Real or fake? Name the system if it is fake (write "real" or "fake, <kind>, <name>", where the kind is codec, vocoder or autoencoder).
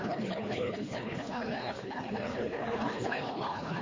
fake, codec, HILCodec